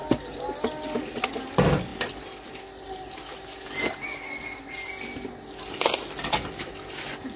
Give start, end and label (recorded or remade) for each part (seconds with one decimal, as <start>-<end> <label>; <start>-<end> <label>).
0.0-7.4 recorded